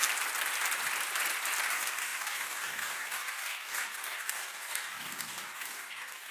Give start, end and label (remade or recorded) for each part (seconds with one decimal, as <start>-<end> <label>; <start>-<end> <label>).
0.0-1.7 recorded; 1.7-6.3 remade